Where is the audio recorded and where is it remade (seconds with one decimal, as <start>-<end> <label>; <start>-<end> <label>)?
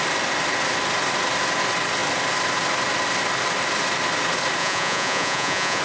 0.0-4.6 recorded; 4.6-5.8 remade